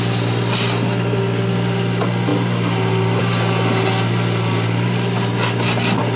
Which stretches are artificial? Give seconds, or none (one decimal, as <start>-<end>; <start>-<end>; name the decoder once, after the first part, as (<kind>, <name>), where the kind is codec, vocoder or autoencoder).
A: none